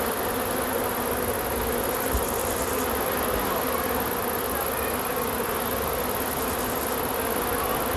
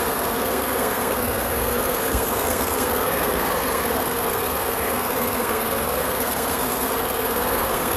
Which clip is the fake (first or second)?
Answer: second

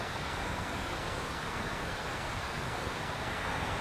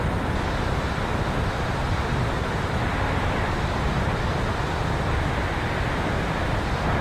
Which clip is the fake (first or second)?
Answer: first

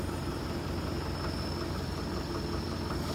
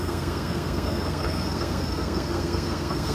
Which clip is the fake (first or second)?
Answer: second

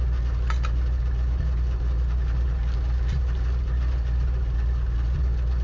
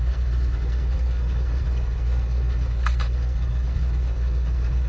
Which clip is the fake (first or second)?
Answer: second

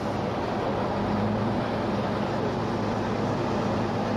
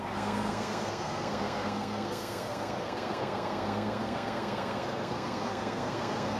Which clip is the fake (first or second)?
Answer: second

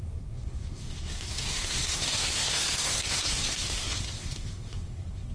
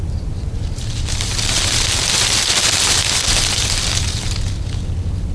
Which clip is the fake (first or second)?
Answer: first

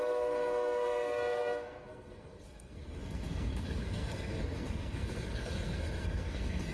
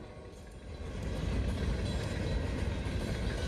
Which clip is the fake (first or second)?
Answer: first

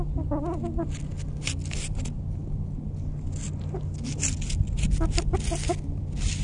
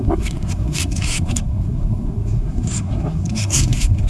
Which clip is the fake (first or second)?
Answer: second